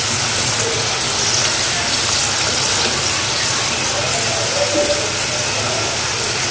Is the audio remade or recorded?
recorded